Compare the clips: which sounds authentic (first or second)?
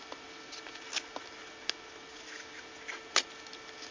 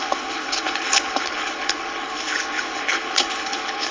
first